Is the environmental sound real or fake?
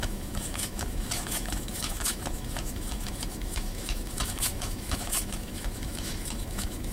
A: fake